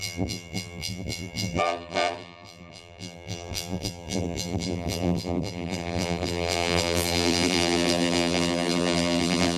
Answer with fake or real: fake